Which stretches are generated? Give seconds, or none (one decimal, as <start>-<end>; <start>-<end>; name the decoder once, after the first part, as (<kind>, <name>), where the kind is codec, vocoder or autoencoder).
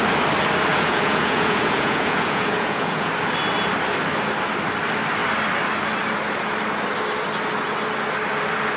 0.7-3.1 (vocoder, Vocos)